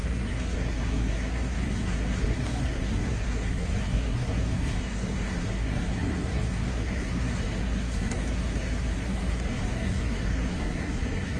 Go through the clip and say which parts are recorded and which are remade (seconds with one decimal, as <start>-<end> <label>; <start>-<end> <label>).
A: 0.0-11.4 remade